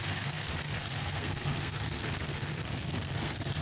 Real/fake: fake